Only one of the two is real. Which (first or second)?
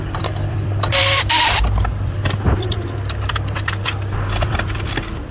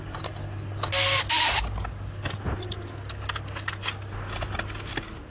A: second